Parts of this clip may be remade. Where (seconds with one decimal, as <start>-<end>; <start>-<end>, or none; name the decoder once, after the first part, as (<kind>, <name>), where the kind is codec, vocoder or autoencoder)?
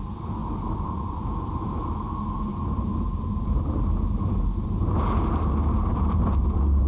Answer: 0.4-1.6 (vocoder, BigVGAN v2); 2.5-6.9